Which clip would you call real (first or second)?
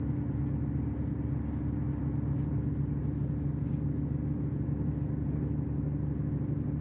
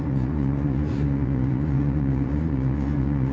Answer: first